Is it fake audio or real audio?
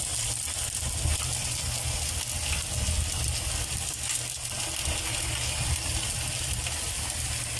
real